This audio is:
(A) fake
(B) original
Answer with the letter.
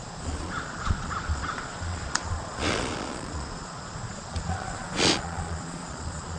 A